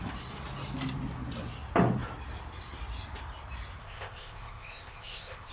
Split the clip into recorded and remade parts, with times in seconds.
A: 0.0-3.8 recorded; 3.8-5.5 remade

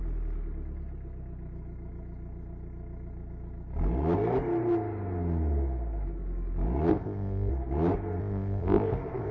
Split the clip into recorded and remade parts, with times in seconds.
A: 0.0-6.9 recorded; 6.9-7.5 remade; 7.5-8.2 recorded; 8.2-9.3 remade

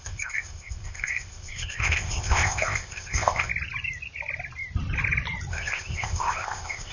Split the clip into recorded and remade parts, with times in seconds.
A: 0.0-3.5 remade; 3.5-5.5 recorded; 5.5-6.9 remade